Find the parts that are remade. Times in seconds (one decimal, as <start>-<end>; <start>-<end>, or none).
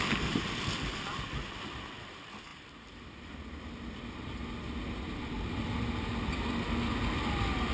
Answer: none